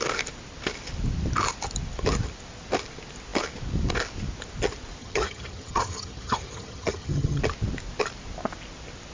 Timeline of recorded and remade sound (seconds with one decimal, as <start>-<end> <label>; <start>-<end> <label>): 0.0-5.0 recorded; 5.0-7.4 remade; 7.4-9.1 recorded